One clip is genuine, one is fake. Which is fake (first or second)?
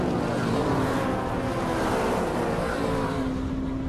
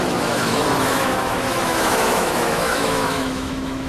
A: second